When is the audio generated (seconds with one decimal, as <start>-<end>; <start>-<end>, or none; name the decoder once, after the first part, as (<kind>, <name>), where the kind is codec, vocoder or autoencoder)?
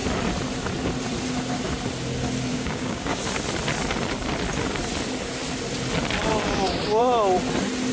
2.5-3.2 (codec, DAC)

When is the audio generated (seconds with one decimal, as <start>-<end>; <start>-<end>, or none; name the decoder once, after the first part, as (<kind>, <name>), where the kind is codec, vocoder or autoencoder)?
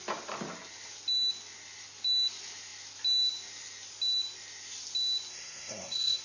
5.3-6.2 (codec, SNAC)